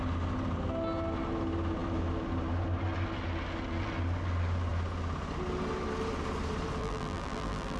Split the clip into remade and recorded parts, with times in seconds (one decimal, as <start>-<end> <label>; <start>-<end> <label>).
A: 0.0-6.8 recorded; 6.8-7.8 remade